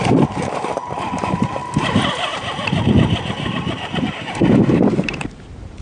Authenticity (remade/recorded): remade